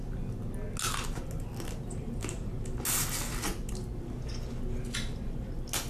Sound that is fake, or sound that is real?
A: real